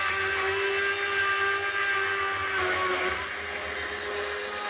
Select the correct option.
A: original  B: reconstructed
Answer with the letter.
A